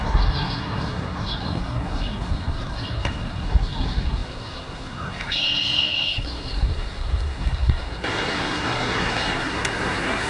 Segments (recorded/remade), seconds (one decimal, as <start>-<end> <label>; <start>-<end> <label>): 0.0-10.3 remade